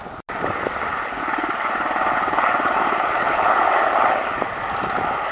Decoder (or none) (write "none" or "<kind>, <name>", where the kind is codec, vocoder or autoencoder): none